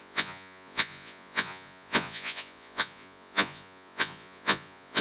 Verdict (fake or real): fake